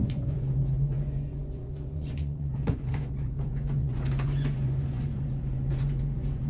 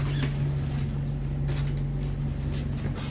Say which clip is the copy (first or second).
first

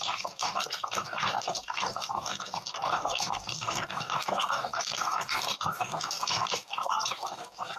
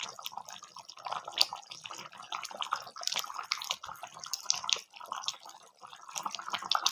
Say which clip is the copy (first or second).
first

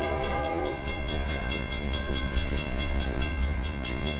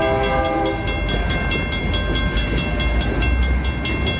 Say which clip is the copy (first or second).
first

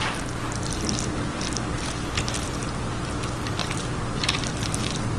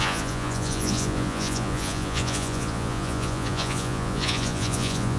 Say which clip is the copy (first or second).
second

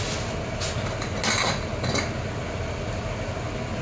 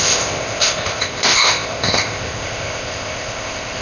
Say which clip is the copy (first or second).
second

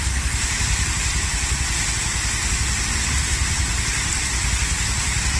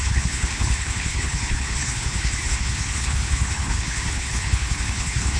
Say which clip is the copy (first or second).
second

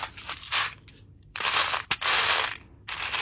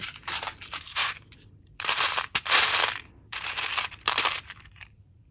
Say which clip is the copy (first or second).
second